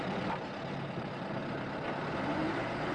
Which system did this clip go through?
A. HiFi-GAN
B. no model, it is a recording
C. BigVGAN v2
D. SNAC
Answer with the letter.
B